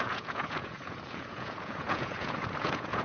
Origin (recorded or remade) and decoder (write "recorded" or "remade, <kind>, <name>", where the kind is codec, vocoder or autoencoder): remade, vocoder, Vocos